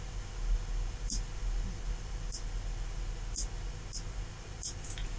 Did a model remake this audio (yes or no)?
no